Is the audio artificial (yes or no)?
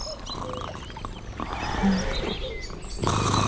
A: no